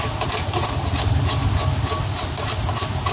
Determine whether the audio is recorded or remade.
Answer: recorded